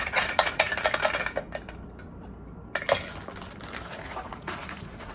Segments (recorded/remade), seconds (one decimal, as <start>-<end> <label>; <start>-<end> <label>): 0.0-0.7 remade; 0.7-3.8 recorded; 3.8-5.1 remade

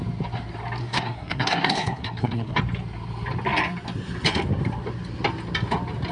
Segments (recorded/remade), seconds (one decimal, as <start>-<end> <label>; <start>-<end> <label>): 0.0-0.8 recorded; 0.8-2.6 remade; 2.6-6.1 recorded

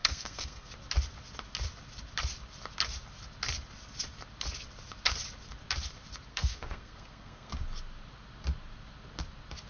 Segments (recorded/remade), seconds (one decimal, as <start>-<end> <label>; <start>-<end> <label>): 0.0-0.7 remade; 0.7-6.3 recorded; 6.3-7.5 remade; 7.5-9.7 recorded